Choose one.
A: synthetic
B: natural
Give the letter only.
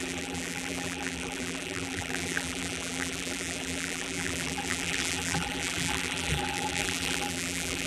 A